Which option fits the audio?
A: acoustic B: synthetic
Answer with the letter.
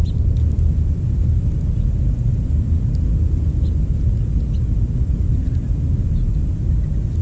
A